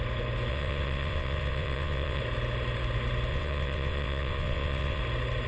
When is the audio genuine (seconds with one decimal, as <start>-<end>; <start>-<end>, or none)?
0.0-0.5; 2.2-3.3; 5.0-5.5

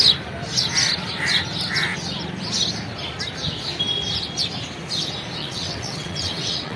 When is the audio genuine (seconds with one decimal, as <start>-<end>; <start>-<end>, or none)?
0.0-5.4

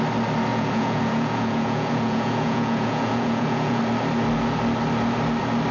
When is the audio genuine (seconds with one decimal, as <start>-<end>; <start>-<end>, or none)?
0.0-0.5; 3.8-5.7

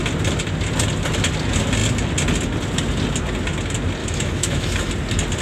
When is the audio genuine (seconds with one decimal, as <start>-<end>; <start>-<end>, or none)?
0.0-4.0; 4.9-5.4

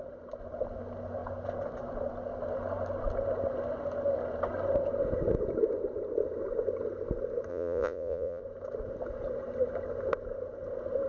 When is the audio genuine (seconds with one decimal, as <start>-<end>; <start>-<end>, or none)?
0.0-7.5; 8.4-11.1

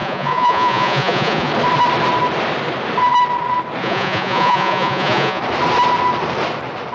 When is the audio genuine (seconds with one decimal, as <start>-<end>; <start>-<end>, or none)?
1.5-3.8; 5.4-6.9

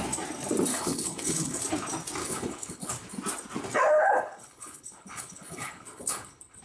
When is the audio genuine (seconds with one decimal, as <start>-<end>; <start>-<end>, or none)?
0.0-0.7; 1.6-2.2; 2.9-3.9

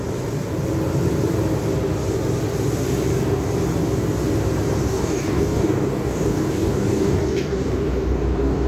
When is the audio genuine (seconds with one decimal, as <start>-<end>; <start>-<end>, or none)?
0.0-4.8